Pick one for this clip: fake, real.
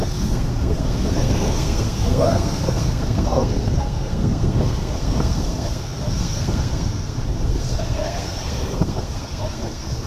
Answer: fake